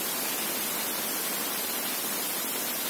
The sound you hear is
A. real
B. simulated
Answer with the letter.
A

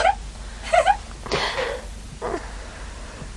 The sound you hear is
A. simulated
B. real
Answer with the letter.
B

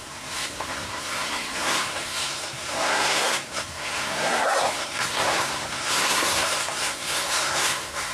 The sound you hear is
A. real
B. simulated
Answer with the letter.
B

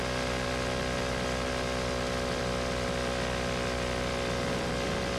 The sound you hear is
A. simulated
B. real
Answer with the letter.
B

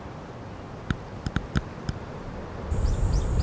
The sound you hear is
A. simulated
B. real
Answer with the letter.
B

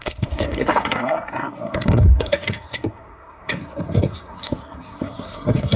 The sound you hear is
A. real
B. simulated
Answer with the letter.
B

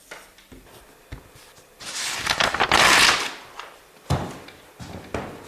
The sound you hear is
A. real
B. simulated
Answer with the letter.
A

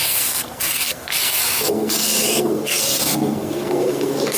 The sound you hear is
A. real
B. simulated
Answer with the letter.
B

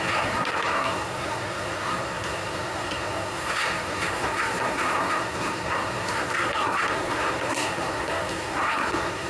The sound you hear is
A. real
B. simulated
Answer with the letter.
B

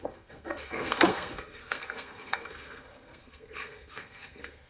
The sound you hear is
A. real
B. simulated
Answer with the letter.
B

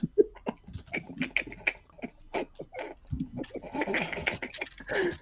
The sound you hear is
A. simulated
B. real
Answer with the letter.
B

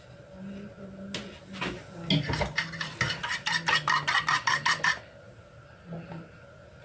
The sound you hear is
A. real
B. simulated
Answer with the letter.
A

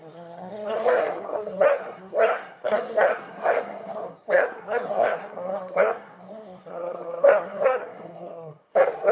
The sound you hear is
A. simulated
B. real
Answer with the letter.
A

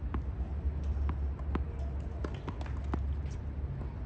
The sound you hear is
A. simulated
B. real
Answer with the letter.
B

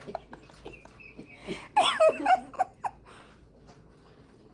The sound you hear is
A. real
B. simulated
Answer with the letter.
A